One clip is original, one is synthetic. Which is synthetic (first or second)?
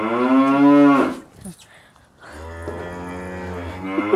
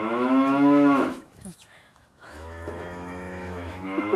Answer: second